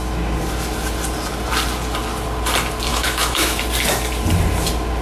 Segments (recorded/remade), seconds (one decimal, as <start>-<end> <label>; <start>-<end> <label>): 0.0-2.9 recorded; 2.9-3.6 remade; 3.6-5.0 recorded